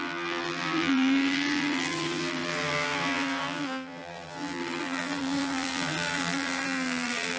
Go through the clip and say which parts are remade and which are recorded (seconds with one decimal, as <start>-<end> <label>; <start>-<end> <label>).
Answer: 0.0-7.4 remade

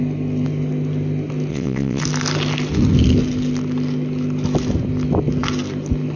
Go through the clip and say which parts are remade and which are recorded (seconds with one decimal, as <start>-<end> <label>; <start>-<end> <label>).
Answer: 0.0-1.5 recorded; 1.5-2.0 remade; 2.0-6.2 recorded

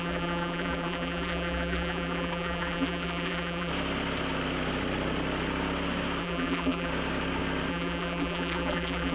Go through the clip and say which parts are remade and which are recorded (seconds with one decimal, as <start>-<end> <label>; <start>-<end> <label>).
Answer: 0.0-3.7 remade; 3.7-6.2 recorded; 6.2-6.9 remade; 6.9-7.7 recorded; 7.7-9.1 remade